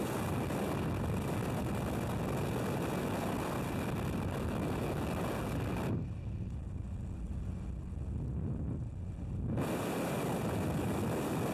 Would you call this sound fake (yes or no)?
no